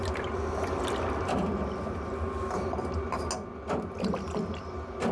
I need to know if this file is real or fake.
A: real